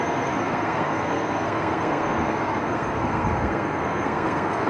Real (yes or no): no